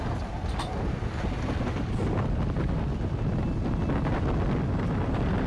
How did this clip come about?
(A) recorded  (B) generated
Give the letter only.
A